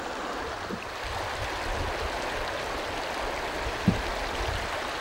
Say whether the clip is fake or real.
real